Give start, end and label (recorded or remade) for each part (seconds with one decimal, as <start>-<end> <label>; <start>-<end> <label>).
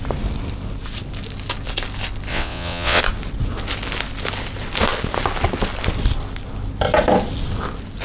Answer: 0.0-2.3 recorded; 2.3-3.0 remade; 3.0-8.0 recorded